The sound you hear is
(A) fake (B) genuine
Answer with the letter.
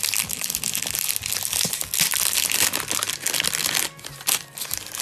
B